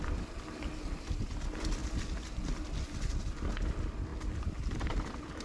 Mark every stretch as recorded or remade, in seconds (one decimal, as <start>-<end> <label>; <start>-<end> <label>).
0.0-5.4 recorded